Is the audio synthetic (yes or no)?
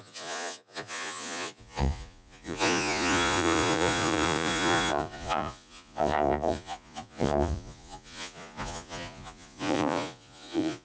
yes